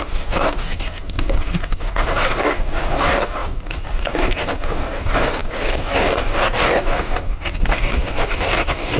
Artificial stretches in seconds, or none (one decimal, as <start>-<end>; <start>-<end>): 0.0-9.0